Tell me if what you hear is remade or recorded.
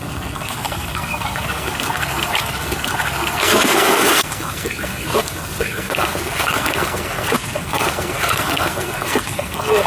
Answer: remade